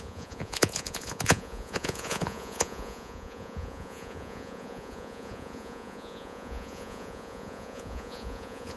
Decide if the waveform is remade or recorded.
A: remade